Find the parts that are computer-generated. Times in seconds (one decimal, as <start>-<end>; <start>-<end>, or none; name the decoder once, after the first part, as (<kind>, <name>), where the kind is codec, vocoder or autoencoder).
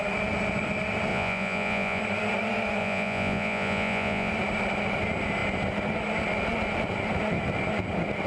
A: 1.1-2.0 (vocoder, Vocos); 2.8-4.3